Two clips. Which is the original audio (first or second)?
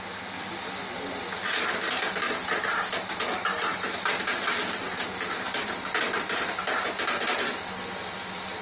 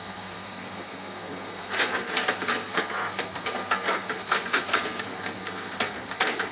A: first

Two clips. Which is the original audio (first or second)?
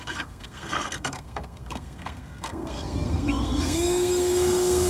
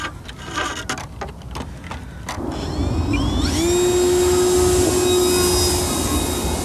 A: second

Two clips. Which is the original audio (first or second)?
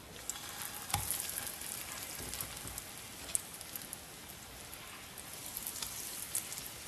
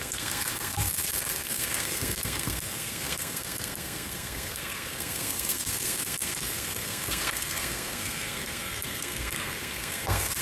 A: first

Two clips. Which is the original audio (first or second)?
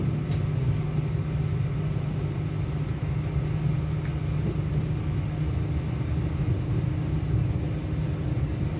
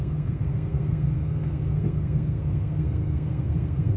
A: first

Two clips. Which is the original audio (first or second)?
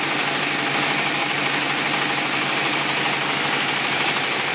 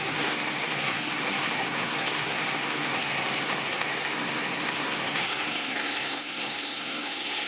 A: first